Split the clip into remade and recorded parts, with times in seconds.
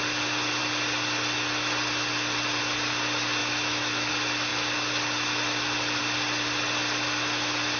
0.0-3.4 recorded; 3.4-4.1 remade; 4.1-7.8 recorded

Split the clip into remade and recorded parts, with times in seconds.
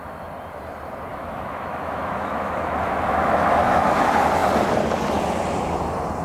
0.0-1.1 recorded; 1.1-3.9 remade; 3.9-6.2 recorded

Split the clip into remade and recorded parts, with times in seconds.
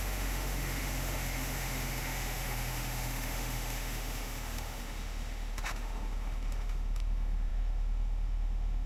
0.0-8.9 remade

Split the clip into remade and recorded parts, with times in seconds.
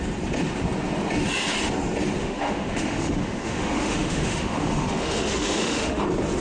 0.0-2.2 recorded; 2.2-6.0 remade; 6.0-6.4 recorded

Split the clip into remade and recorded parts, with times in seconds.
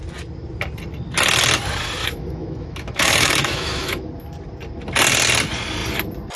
0.0-2.0 recorded; 2.0-4.1 remade; 4.1-6.4 recorded